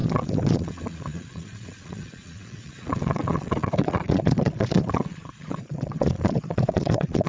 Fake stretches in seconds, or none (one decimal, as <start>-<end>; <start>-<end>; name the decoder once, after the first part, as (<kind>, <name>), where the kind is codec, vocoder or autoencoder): 0.0-7.3 (vocoder, Vocos)